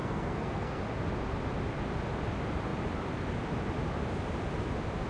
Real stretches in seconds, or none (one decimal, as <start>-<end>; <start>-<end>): 0.8-5.1